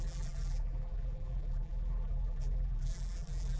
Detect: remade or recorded remade